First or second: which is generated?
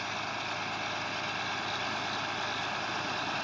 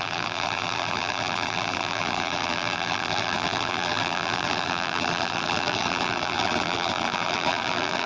second